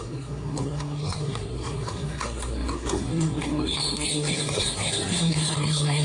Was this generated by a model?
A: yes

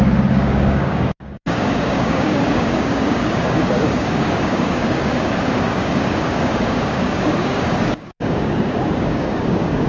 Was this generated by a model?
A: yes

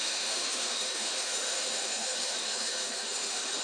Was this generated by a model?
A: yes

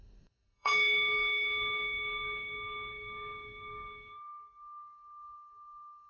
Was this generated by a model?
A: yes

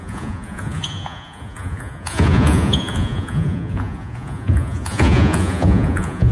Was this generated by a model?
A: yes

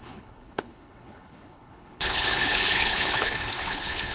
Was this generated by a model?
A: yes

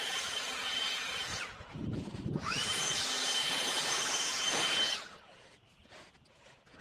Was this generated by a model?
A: yes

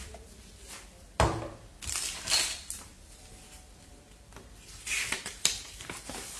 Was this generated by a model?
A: yes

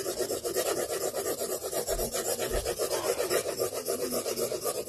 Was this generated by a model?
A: no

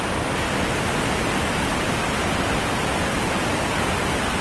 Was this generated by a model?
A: no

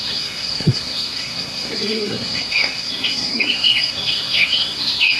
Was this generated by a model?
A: yes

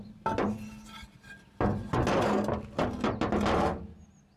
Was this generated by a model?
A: no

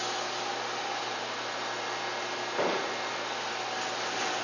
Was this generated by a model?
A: no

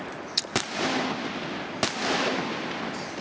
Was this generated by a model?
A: no